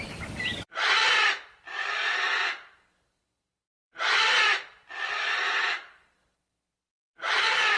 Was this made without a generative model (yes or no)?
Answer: no